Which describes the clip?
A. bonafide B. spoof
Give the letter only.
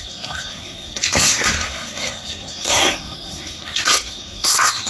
B